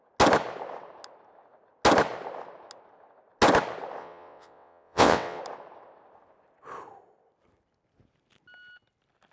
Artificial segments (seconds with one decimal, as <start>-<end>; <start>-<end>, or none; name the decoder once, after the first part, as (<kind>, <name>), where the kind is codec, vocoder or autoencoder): 4.0-5.4 (vocoder, WaveNeXt)